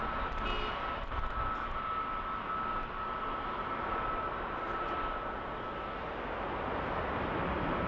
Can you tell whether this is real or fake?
real